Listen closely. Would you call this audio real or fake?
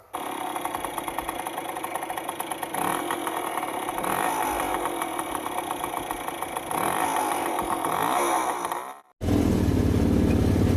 real